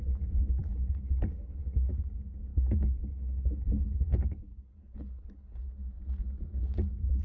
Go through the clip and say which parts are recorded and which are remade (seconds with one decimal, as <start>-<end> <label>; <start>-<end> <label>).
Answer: 0.0-0.7 recorded; 0.7-1.9 remade; 1.9-2.5 recorded; 2.5-5.6 remade; 5.6-7.2 recorded